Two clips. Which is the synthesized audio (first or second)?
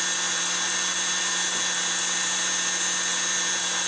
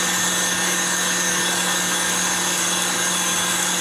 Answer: second